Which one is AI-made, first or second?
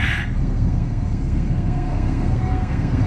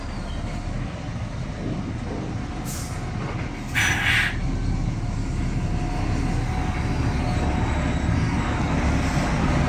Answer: first